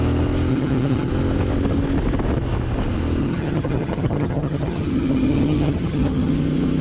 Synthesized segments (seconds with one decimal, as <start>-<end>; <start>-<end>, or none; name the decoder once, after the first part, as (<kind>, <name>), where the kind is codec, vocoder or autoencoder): 0.5-1.1 (vocoder, HiFi-GAN); 3.2-6.3

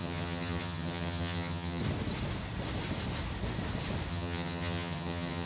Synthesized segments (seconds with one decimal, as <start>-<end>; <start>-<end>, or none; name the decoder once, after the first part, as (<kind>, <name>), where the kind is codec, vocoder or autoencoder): 0.0-1.8 (vocoder, HiFi-GAN); 4.1-5.5

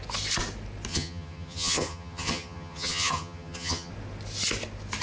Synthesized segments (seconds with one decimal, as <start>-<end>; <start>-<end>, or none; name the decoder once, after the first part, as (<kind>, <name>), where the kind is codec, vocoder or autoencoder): 0.9-3.9 (vocoder, HiFi-GAN)